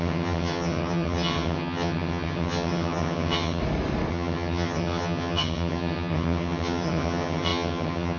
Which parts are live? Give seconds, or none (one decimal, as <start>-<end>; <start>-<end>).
3.6-4.1